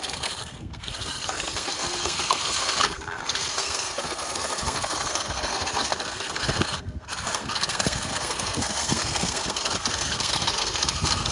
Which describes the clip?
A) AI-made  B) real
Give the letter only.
A